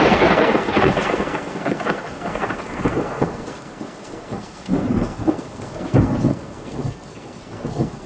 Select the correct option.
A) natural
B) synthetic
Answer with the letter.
B